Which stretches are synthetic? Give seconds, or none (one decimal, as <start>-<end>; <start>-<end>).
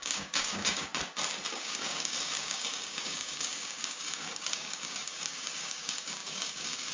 0.0-0.9; 1.5-6.9